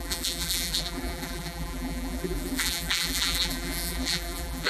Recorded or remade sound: remade